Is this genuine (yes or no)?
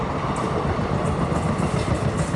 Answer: yes